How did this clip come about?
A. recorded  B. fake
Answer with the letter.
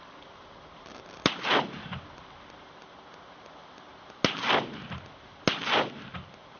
A